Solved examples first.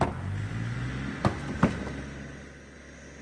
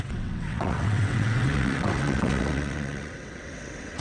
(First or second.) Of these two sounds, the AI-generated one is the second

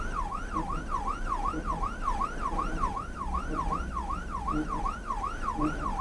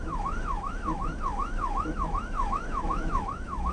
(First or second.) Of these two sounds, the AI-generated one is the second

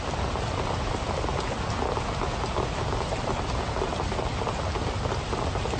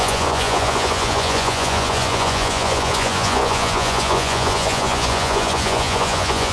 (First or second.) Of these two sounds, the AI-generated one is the second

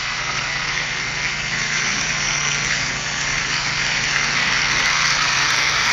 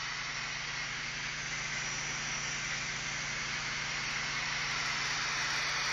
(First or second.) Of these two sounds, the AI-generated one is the first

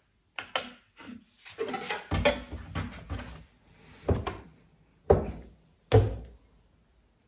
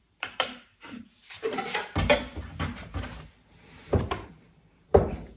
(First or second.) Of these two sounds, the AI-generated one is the second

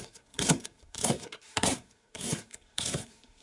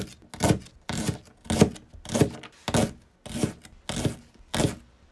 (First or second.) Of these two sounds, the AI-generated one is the first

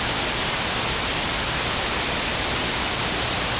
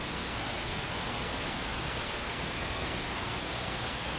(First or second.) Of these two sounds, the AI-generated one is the second